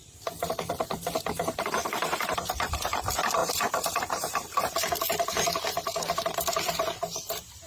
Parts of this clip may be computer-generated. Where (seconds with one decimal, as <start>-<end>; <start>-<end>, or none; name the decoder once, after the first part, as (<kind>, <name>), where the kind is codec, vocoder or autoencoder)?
1.8-3.0 (vocoder, BigVGAN v2); 3.4-7.7